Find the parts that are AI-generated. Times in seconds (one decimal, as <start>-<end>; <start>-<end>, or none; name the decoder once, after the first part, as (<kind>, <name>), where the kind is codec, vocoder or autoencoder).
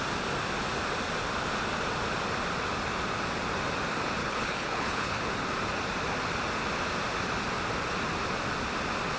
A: 4.2-5.2 (codec, HILCodec)